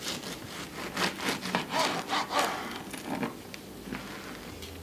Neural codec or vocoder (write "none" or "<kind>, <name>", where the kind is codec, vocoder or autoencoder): none